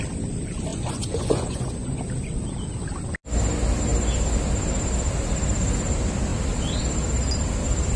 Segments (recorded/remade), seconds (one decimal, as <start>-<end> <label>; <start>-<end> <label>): 0.0-0.7 recorded; 0.7-2.0 remade; 2.0-8.0 recorded